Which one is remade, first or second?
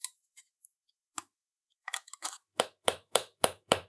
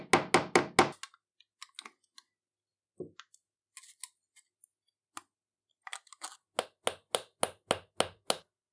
first